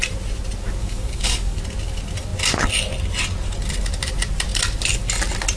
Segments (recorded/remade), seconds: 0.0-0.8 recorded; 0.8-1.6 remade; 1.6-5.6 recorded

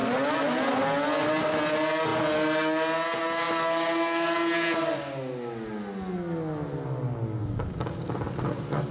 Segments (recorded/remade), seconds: 0.0-8.9 recorded

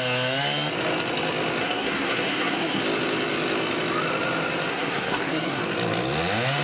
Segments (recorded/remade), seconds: 0.0-1.6 recorded; 1.6-2.8 remade; 2.8-4.7 recorded; 4.7-5.6 remade; 5.6-6.6 recorded

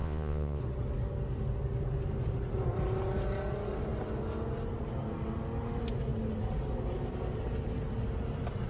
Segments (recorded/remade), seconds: 0.0-0.6 remade; 0.6-8.7 recorded

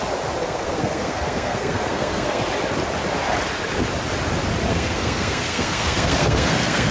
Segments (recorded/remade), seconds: 0.0-0.4 recorded; 0.4-2.4 remade; 2.4-4.7 recorded; 4.7-6.9 remade

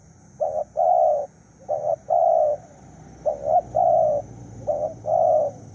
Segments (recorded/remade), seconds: 0.0-5.7 recorded